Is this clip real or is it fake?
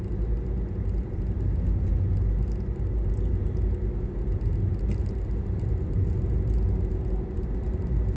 real